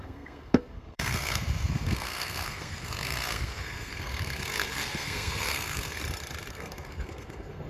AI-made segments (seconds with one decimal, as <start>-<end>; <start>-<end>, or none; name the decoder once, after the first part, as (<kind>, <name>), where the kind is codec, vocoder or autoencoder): 0.0-6.0 (codec, SNAC); 6.5-7.7